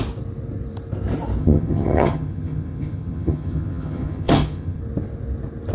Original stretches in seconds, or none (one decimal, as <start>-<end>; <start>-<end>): 0.0-1.4; 4.8-5.7